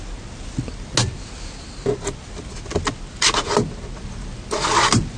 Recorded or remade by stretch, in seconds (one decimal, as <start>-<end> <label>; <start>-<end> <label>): 0.0-5.2 recorded